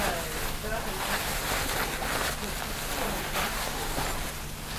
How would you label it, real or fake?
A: real